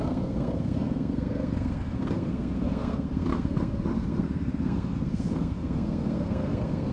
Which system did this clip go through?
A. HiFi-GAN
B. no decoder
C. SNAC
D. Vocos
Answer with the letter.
C